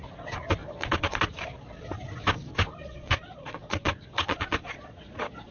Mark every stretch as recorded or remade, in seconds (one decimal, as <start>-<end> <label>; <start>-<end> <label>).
0.0-0.6 recorded; 0.6-1.2 remade; 1.2-2.8 recorded; 2.8-5.5 remade